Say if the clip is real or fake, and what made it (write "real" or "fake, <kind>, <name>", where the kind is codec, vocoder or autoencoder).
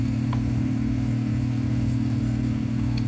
fake, codec, SNAC